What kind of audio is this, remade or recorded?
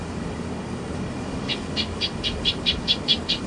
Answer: remade